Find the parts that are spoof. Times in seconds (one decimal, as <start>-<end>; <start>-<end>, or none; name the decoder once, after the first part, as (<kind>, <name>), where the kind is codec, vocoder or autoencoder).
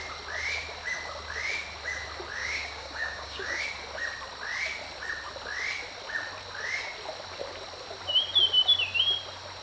2.4-3.6 (codec, DAC)